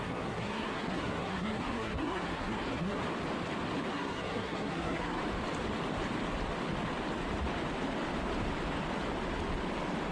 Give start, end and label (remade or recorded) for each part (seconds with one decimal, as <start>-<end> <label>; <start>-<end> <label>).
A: 0.0-3.0 remade; 3.0-3.9 recorded; 3.9-5.2 remade; 5.2-10.1 recorded